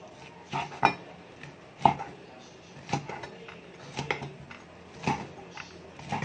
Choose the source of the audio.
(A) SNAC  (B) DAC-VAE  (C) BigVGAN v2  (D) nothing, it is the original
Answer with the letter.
D